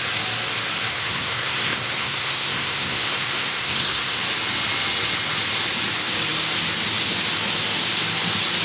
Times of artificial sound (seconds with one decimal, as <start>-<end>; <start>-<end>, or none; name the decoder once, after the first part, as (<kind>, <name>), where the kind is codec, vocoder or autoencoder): 0.9-4.2 (codec, SNAC)